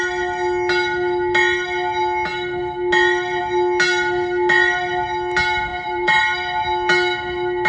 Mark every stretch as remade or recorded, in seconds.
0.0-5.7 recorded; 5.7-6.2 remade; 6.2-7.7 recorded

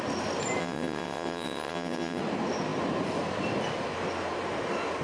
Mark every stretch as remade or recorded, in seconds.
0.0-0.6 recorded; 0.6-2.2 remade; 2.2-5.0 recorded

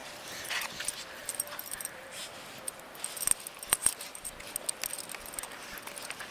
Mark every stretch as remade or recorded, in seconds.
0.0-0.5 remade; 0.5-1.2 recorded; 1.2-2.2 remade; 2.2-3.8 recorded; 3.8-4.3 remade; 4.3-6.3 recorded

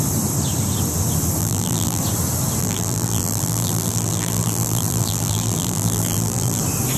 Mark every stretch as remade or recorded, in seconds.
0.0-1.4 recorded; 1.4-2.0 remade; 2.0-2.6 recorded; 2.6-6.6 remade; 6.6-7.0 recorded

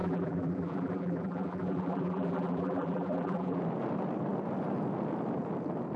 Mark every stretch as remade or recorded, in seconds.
0.0-3.6 remade; 3.6-6.0 recorded

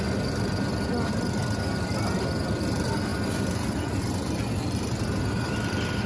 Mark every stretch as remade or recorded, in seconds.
0.0-6.1 recorded